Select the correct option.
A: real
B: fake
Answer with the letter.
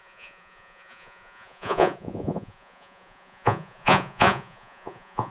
B